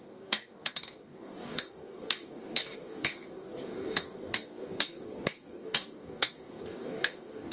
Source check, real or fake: fake